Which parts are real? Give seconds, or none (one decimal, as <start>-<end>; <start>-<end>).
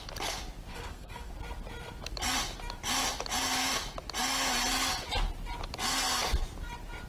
0.0-0.7; 1.3-7.1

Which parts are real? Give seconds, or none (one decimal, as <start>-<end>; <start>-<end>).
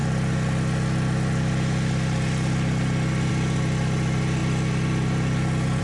0.0-5.8